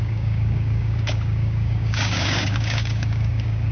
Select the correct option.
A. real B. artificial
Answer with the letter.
B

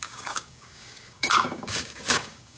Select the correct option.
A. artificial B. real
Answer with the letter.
A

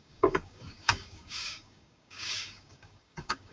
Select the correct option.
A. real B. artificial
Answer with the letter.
B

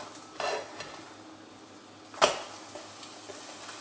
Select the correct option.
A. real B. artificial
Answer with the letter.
A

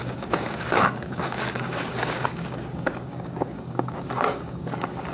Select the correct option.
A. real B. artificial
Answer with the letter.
B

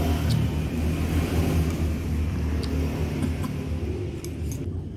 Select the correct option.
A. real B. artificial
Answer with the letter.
A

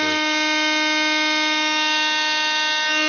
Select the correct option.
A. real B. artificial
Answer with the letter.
A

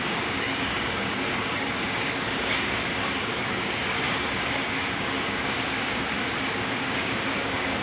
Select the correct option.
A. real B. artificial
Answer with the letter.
B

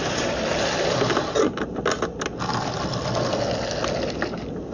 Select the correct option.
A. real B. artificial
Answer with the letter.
A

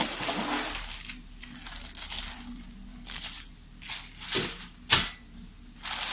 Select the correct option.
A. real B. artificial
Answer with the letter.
A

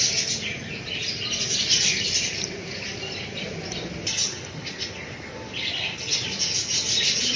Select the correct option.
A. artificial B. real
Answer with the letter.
B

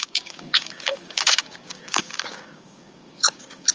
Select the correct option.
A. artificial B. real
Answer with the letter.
A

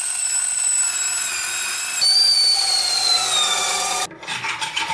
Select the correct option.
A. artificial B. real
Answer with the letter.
B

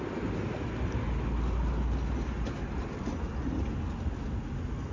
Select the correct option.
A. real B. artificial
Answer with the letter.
A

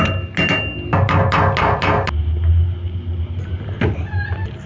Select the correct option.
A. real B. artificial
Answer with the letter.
A